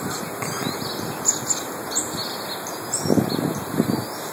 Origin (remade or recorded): recorded